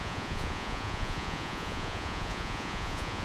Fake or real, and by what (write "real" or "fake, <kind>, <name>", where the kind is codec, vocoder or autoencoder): fake, vocoder, Vocos